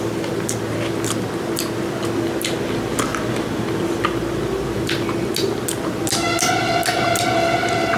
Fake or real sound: real